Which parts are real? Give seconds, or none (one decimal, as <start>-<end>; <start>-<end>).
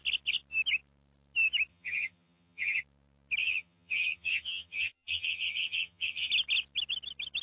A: 0.0-1.7; 2.8-3.4; 6.3-7.4